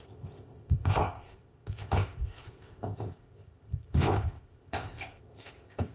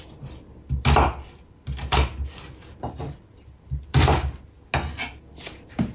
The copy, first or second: first